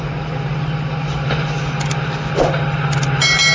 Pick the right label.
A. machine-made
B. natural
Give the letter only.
B